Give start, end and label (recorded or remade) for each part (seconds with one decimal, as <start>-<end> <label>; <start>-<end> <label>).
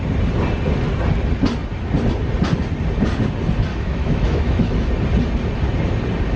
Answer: 0.0-3.7 recorded; 3.7-4.9 remade; 4.9-6.4 recorded